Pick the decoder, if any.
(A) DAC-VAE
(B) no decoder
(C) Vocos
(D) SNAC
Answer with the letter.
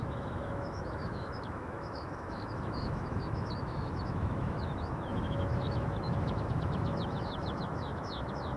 A